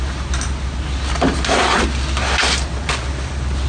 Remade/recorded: recorded